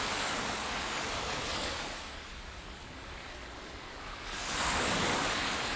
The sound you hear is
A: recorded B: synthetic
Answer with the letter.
B